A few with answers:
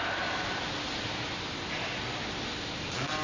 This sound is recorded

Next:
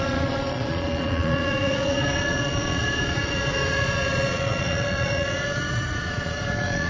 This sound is remade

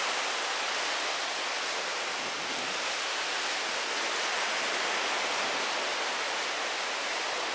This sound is recorded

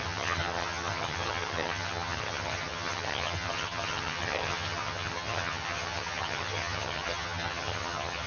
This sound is remade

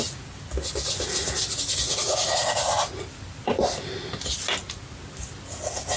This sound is recorded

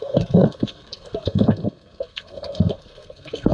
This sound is remade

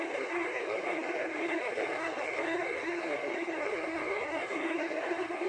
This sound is remade